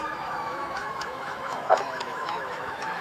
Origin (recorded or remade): remade